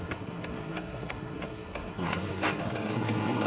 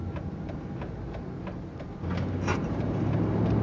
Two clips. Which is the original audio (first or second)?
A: second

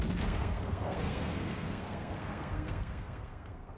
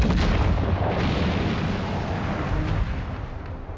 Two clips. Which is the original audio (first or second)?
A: second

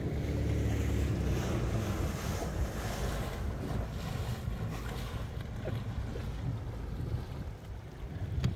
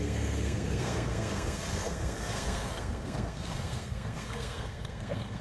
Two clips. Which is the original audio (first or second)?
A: first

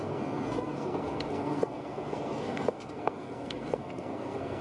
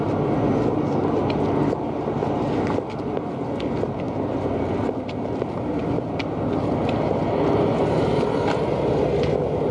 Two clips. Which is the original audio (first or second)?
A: second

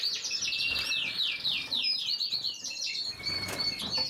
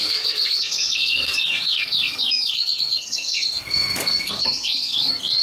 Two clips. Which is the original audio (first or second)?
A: first